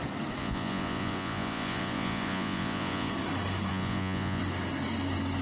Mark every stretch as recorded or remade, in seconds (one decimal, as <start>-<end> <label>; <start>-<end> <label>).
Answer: 0.0-0.4 recorded; 0.4-3.1 remade; 3.1-3.7 recorded; 3.7-4.4 remade; 4.4-5.4 recorded